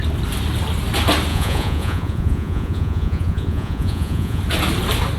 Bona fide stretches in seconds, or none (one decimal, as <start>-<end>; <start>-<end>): 0.0-1.3; 4.4-5.2